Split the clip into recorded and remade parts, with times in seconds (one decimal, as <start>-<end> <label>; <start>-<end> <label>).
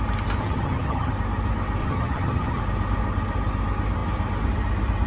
0.0-0.4 recorded; 0.4-1.1 remade; 1.1-1.8 recorded; 1.8-2.6 remade; 2.6-5.1 recorded